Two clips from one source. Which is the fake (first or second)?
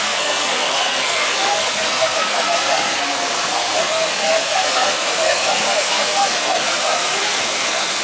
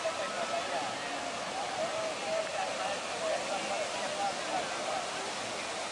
first